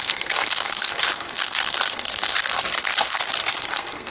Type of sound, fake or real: fake